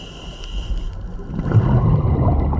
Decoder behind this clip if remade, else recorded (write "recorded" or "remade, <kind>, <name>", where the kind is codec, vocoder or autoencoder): recorded